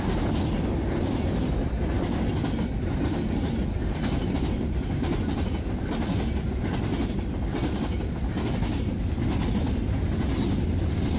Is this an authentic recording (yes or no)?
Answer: yes